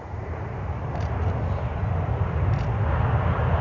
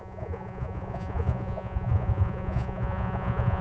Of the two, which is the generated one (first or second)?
second